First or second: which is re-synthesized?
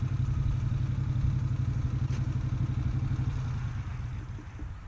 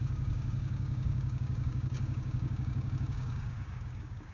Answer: second